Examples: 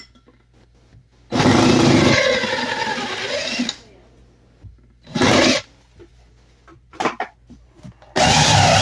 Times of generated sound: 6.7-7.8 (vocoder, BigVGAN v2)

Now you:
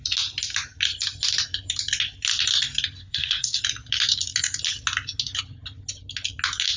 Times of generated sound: 3.0-3.6 (codec, SNAC)

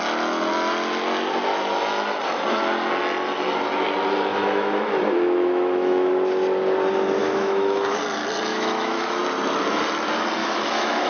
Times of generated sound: 4.3-6.1 (autoencoder, DAC-VAE); 7.2-8.0; 8.5-9.2; 10.4-11.1